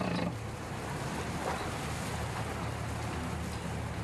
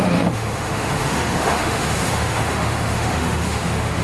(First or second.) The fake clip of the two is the second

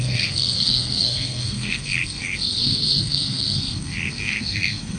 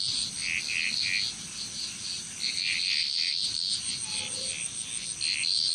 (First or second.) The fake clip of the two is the first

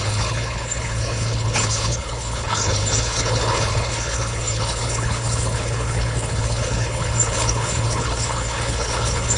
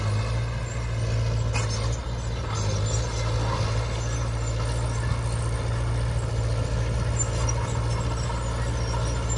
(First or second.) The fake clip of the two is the first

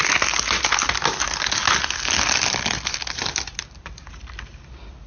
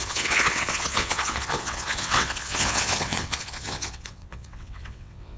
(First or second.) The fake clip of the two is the second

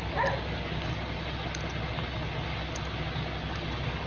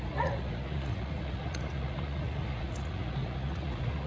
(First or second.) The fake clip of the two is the second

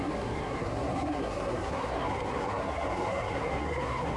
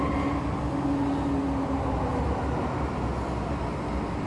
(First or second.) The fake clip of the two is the first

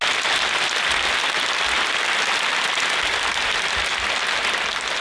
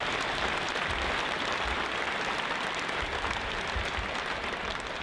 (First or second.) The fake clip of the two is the second